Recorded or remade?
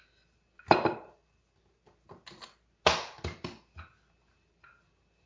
recorded